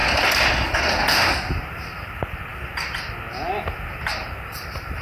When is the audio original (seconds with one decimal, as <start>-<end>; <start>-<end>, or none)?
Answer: 0.0-5.0